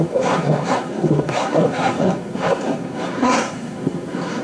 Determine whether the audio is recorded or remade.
remade